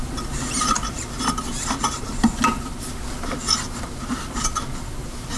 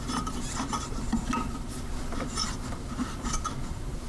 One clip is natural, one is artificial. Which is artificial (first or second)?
second